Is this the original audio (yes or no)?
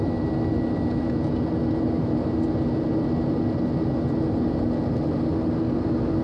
yes